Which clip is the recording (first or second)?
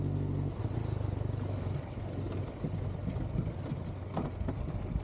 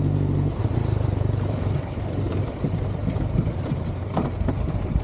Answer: first